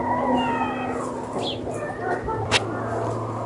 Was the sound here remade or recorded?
recorded